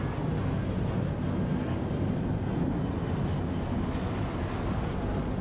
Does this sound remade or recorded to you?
recorded